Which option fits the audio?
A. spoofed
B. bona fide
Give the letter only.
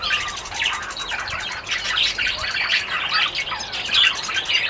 B